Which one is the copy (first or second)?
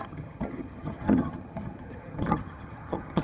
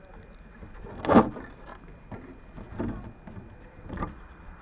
first